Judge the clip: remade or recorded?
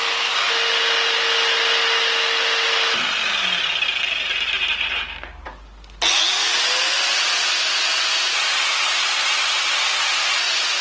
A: recorded